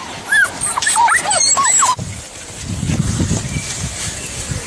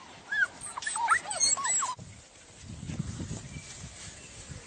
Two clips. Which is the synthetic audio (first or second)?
first